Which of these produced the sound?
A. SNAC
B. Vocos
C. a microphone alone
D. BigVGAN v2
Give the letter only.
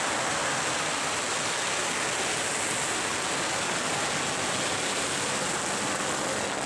C